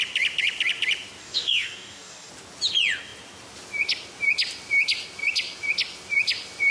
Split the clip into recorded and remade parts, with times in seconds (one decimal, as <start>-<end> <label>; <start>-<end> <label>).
0.0-1.2 recorded; 1.2-2.3 remade; 2.3-6.7 recorded